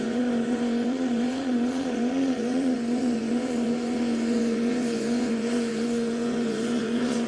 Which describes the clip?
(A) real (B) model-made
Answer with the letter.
B